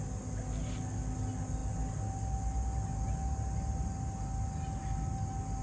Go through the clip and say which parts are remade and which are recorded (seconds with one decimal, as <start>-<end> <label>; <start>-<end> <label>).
0.0-5.6 recorded